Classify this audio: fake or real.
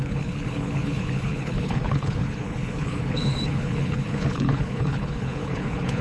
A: fake